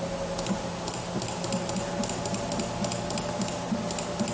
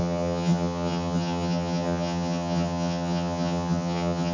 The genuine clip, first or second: first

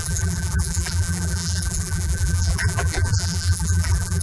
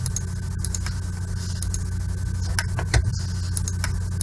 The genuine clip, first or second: second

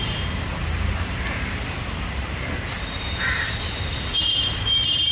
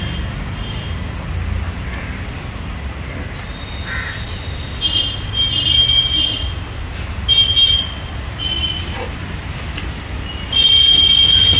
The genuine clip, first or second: second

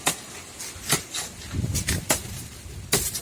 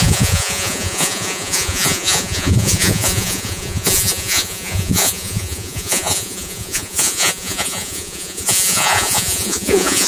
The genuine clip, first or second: first